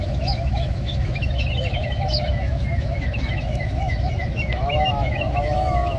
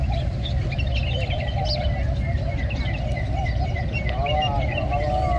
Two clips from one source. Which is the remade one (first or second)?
first